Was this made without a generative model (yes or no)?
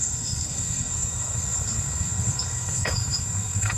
no